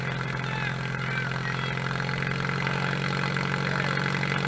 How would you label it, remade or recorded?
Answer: recorded